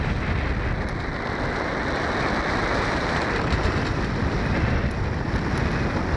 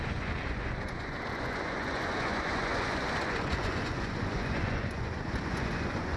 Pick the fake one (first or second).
second